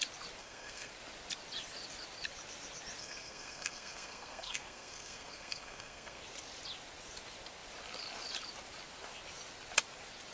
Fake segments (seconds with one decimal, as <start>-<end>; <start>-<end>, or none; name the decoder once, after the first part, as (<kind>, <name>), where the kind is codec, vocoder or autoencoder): 0.4-0.9 (codec, SNAC); 3.0-6.2